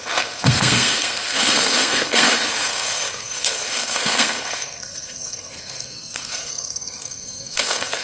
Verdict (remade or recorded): remade